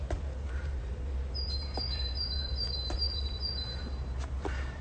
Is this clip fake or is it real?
fake